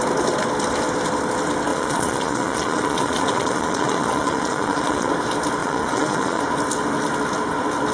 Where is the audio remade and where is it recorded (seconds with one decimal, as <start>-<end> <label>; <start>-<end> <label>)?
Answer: 0.0-1.7 recorded; 1.7-5.1 remade; 5.1-5.6 recorded; 5.6-6.4 remade; 6.4-7.9 recorded